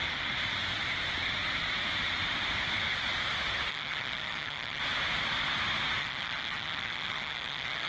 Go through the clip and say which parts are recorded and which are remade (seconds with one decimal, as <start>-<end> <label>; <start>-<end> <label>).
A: 0.0-3.7 recorded; 3.7-4.8 remade; 4.8-6.0 recorded; 6.0-7.9 remade